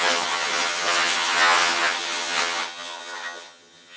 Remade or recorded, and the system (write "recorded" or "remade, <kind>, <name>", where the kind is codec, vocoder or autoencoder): remade, vocoder, HiFi-GAN